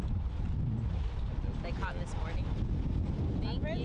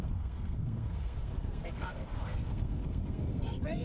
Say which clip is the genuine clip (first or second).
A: first